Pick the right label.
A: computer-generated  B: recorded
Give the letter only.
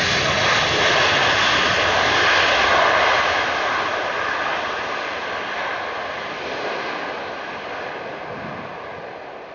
B